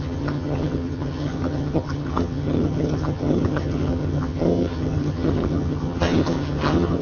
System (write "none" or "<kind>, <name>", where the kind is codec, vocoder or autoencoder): vocoder, HiFi-GAN